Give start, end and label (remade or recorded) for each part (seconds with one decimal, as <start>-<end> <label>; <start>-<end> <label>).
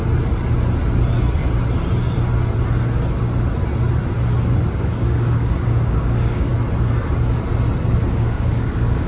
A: 0.0-4.7 recorded; 4.7-6.5 remade; 6.5-8.1 recorded; 8.1-9.1 remade